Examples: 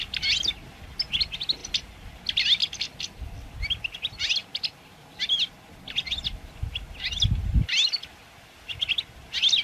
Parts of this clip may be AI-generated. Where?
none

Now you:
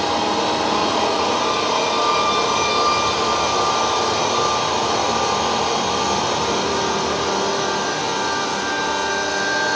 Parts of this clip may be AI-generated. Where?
0.8-1.4 (vocoder, Vocos)

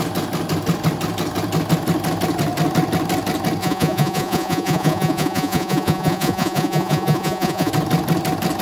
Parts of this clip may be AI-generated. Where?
3.6-7.7 (vocoder, Vocos)